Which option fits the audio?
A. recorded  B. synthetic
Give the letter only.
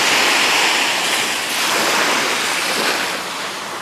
A